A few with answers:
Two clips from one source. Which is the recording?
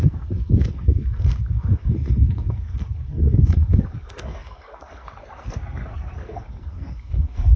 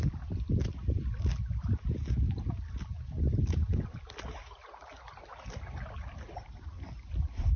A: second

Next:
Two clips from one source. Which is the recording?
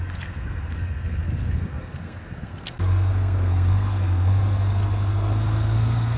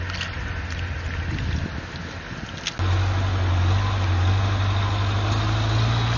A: second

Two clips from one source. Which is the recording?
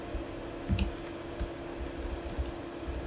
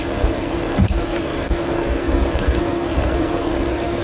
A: first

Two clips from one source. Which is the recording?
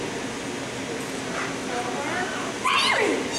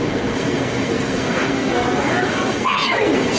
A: first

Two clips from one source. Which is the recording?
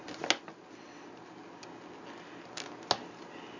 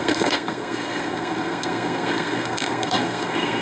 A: first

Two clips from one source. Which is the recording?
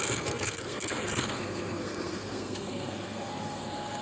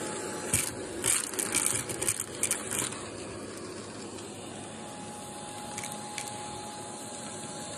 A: second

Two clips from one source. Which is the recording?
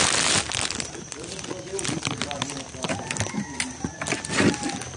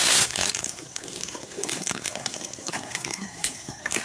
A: first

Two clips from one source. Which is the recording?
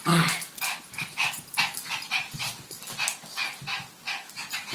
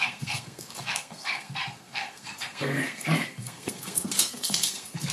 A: first